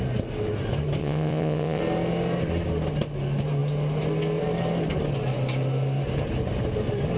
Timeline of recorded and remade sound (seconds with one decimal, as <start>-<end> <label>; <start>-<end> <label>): 0.0-1.0 recorded; 1.0-1.8 remade; 1.8-7.2 recorded

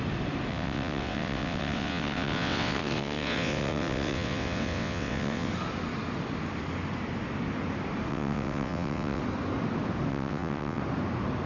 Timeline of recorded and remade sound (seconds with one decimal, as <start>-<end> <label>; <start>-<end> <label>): 0.0-0.5 recorded; 0.5-5.5 remade; 5.5-8.1 recorded; 8.1-9.2 remade; 9.2-10.1 recorded; 10.1-10.8 remade; 10.8-11.5 recorded

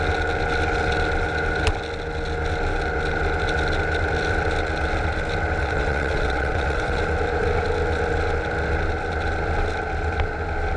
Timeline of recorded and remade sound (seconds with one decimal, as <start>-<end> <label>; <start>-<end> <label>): 0.0-5.6 recorded; 5.6-7.0 remade; 7.0-10.8 recorded

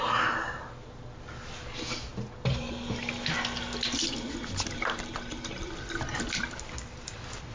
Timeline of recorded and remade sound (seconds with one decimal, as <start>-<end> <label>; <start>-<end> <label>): 0.0-7.5 recorded

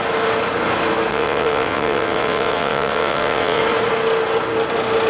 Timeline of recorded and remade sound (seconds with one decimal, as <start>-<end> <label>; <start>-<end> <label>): 0.0-1.1 recorded; 1.1-3.6 remade; 3.6-5.1 recorded

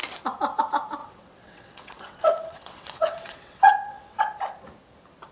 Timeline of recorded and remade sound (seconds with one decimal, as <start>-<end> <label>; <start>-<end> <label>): 0.0-1.0 recorded; 1.0-4.2 remade; 4.2-5.3 recorded